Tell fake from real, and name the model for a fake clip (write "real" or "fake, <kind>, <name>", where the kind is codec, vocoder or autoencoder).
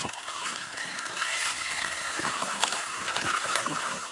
fake, codec, SNAC